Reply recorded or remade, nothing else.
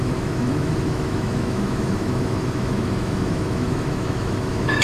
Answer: remade